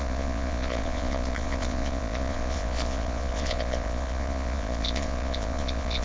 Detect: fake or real fake